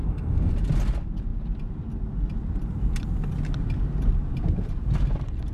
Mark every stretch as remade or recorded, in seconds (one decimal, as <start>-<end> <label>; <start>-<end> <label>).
0.0-0.5 remade; 0.5-5.5 recorded